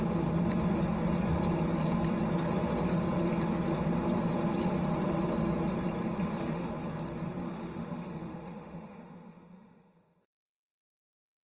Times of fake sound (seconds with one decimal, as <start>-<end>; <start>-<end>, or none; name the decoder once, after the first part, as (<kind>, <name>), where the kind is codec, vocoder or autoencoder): 6.2-6.7 (autoencoder, DAC-VAE); 7.4-10.8